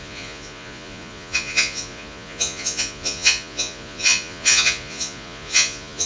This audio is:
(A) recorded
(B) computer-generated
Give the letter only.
B